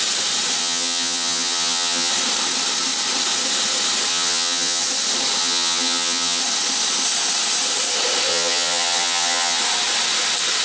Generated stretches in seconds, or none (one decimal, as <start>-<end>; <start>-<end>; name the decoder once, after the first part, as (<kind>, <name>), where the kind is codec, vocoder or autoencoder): 0.6-2.1 (vocoder, HiFi-GAN); 4.1-4.8; 5.4-6.4; 8.3-9.6